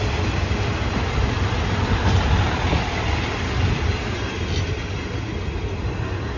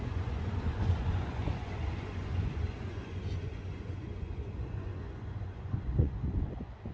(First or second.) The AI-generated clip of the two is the second